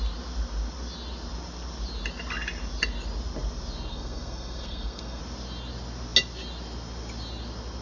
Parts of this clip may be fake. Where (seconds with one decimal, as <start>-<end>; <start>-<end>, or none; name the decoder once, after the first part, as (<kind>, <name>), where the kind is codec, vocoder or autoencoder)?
3.9-5.2 (codec, SNAC)